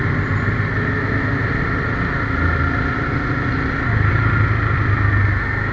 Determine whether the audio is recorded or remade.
recorded